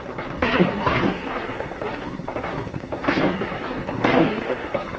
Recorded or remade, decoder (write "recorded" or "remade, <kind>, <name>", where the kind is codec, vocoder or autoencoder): remade, codec, SNAC